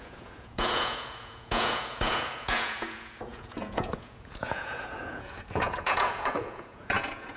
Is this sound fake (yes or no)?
yes